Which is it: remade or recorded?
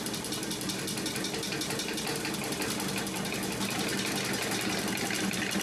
recorded